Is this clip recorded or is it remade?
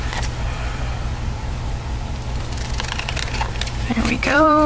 remade